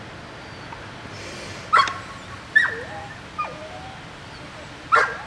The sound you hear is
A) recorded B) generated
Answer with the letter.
A